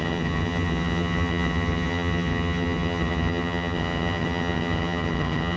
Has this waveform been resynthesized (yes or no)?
yes